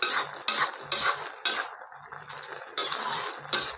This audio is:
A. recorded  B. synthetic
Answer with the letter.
A